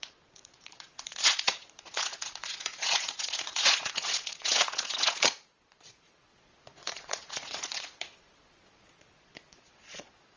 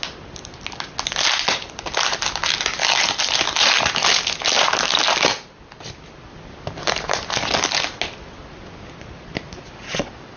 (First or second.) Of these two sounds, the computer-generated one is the first